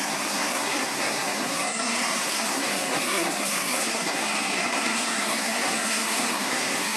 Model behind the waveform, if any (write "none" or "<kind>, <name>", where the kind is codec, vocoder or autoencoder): codec, SNAC